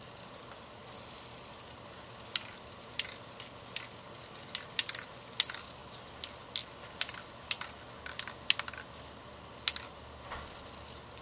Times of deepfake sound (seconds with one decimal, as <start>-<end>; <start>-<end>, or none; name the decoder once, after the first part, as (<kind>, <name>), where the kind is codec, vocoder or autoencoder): none